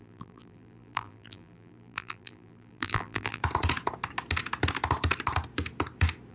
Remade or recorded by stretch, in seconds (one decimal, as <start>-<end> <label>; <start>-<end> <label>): 0.0-3.4 remade; 3.4-6.3 recorded